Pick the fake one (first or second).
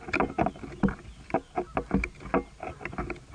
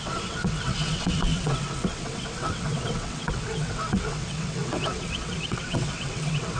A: second